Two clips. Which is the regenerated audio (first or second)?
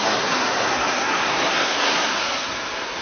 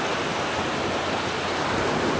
first